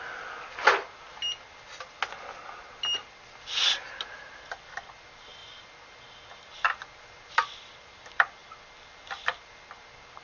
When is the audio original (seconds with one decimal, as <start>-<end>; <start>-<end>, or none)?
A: 0.0-10.2